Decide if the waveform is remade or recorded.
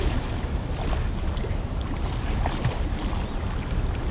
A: recorded